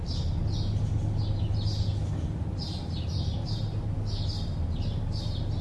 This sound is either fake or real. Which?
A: real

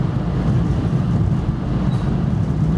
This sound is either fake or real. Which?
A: real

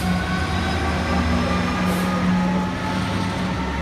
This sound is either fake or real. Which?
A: real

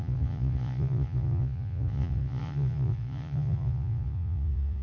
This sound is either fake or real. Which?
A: fake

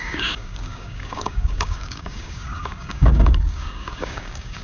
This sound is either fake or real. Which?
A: fake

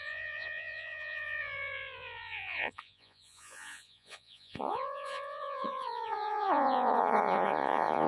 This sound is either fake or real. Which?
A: fake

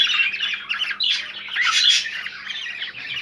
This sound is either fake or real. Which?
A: real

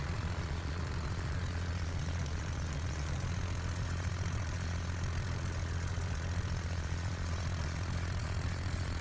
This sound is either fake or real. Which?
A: fake